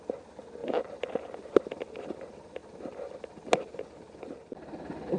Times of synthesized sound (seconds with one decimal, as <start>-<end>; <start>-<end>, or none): 0.0-2.6; 3.6-5.2